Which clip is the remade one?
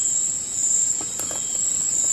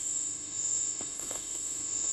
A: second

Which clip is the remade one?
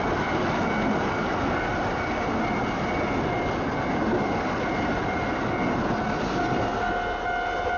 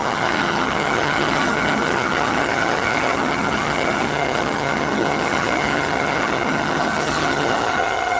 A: second